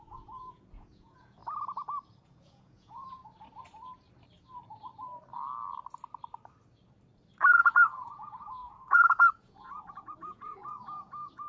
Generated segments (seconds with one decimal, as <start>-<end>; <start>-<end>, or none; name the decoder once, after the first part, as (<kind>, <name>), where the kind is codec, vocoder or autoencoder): 0.0-1.4 (vocoder, Vocos); 2.2-3.2; 7.6-11.5